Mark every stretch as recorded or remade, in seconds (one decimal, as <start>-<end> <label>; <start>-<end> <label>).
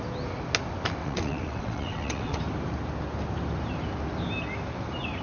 0.0-1.0 recorded; 1.0-2.4 remade; 2.4-5.2 recorded